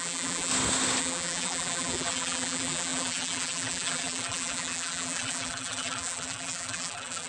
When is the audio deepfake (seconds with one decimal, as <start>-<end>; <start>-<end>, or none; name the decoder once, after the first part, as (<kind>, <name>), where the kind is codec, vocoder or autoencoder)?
0.0-0.5 (vocoder, BigVGAN v2); 1.0-7.3